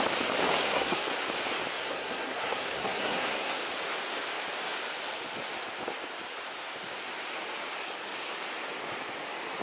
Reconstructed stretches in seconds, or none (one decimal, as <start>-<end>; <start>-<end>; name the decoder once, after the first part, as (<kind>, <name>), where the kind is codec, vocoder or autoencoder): 0.6-1.1 (codec, SNAC); 1.7-3.6